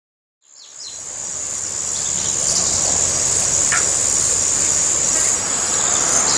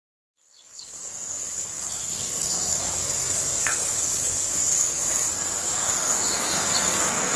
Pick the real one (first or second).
first